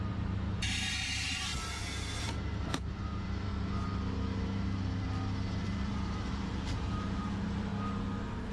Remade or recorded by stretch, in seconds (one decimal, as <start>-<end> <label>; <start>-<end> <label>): 0.0-1.5 remade; 1.5-2.2 recorded; 2.2-3.5 remade; 3.5-5.5 recorded; 5.5-7.7 remade; 7.7-8.5 recorded